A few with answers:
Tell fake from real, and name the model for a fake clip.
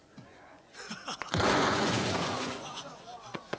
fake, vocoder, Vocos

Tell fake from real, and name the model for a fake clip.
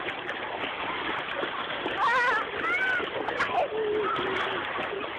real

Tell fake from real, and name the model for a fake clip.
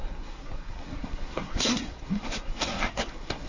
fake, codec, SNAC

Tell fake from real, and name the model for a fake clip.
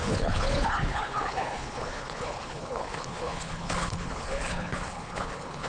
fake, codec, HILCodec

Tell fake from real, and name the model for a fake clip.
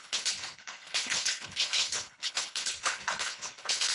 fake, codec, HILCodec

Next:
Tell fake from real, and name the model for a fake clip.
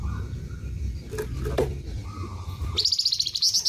real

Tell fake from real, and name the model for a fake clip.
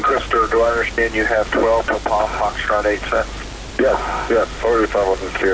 real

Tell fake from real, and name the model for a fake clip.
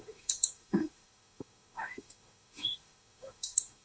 fake, autoencoder, DAC-VAE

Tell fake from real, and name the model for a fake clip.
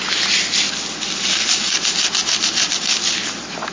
real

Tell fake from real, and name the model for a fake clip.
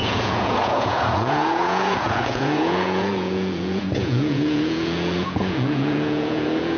fake, vocoder, Vocos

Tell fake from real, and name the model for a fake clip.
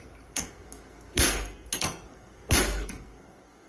fake, codec, SNAC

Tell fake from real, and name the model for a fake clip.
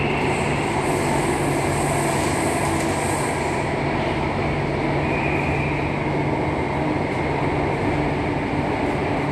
real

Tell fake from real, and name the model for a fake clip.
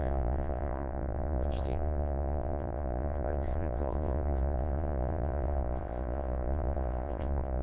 fake, vocoder, Vocos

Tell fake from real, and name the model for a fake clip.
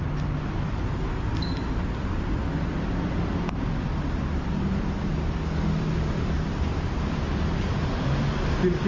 real